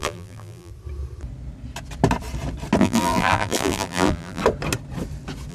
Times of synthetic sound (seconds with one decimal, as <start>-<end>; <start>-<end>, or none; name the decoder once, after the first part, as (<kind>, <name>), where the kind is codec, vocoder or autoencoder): 0.0-0.7 (vocoder, BigVGAN v2); 2.8-4.4